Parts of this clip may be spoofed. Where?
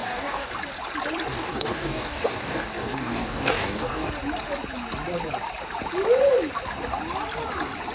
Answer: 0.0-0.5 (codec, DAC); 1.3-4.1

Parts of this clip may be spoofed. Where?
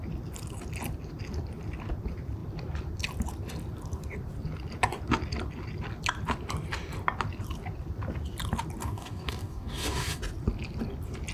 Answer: 8.8-10.2 (codec, DAC)